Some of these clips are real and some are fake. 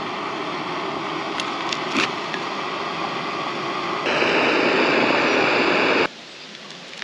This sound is real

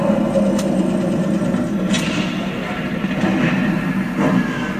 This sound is real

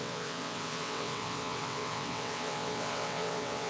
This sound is fake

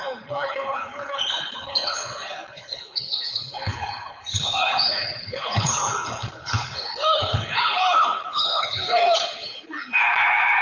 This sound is fake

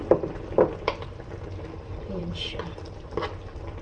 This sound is real